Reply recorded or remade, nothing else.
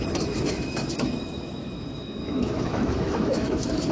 remade